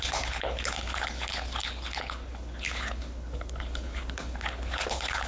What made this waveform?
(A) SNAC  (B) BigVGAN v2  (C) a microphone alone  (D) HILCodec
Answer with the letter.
D